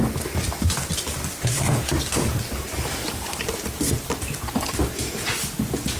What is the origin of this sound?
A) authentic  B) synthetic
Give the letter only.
A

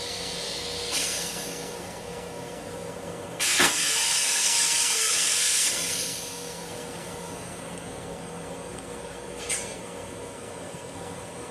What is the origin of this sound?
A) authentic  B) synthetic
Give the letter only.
B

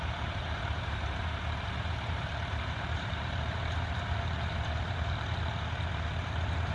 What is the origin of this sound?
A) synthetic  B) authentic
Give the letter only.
A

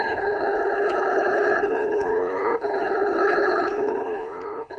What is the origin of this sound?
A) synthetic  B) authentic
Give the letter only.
A